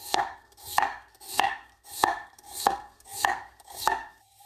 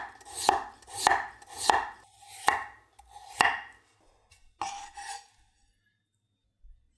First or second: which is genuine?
second